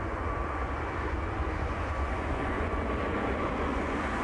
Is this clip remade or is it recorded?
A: remade